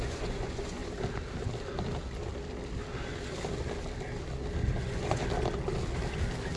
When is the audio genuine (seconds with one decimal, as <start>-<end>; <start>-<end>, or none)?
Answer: 0.8-4.8; 5.2-6.6